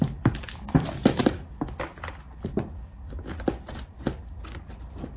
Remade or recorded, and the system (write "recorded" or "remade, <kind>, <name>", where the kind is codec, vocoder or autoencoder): recorded